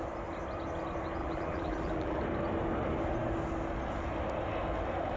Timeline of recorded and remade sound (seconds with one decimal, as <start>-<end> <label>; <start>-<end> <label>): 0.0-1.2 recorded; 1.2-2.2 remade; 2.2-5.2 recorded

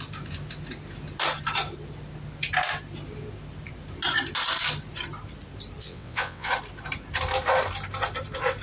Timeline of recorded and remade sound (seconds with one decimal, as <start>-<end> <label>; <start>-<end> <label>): 0.0-5.8 recorded; 5.8-6.5 remade; 6.5-8.6 recorded

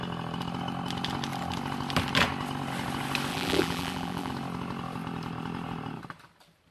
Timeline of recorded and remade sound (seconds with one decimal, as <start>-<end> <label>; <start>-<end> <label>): 0.0-3.3 recorded; 3.3-4.3 remade; 4.3-6.7 recorded